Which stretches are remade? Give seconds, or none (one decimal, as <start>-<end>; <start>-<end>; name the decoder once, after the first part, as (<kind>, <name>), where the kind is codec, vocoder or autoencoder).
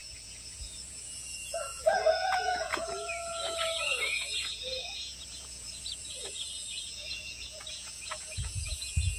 0.0-9.2 (vocoder, Vocos)